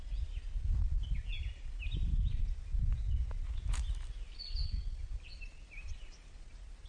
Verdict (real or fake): real